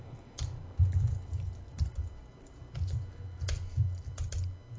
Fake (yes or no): no